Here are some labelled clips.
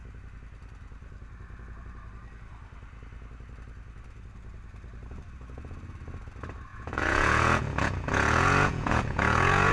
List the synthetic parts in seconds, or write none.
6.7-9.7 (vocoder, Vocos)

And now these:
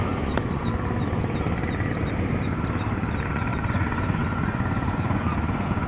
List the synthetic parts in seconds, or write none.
0.0-0.6 (vocoder, Vocos); 3.3-5.9

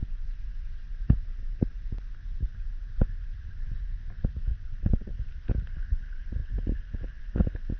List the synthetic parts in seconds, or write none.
4.5-5.1 (vocoder, WaveNeXt)

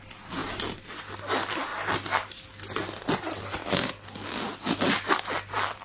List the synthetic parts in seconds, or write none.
none

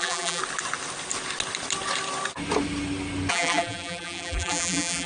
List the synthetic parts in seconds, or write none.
0.0-0.4 (vocoder, BigVGAN v2); 3.3-5.1

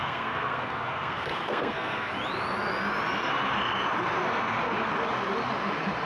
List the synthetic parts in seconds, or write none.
0.0-2.1 (codec, SNAC)

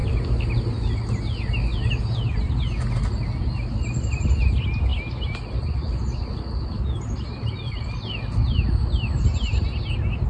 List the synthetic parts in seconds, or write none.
none